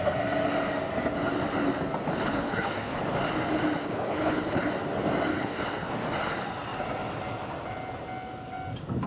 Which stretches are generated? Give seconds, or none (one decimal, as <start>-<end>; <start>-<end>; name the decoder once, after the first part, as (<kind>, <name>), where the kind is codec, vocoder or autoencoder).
2.1-3.0 (codec, HILCodec); 3.8-4.7; 5.3-5.9